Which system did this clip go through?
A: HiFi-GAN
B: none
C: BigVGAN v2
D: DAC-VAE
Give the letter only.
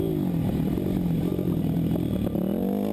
B